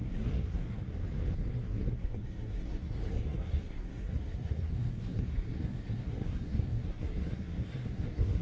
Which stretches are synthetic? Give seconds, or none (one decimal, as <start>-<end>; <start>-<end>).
0.0-0.9; 1.5-8.4